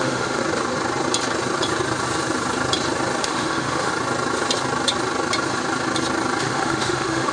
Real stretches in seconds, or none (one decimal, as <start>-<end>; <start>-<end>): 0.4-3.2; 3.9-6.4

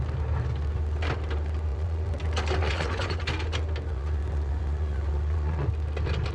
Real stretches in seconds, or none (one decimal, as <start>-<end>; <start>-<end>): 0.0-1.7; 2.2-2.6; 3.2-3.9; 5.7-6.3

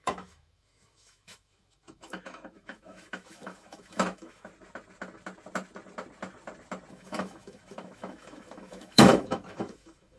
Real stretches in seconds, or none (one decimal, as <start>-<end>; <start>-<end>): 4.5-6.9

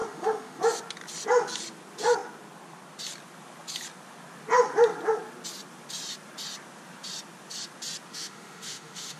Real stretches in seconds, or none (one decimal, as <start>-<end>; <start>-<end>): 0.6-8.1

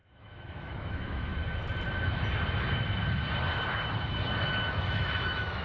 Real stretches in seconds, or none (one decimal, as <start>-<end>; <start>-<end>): 1.3-4.7